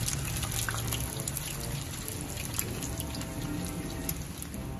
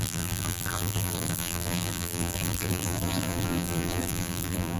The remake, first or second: second